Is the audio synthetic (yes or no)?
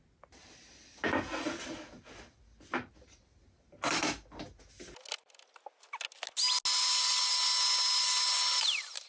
no